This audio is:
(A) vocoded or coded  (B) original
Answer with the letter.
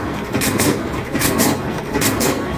A